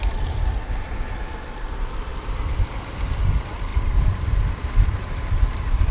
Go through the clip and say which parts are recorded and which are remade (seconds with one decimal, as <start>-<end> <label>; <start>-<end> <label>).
0.0-5.9 recorded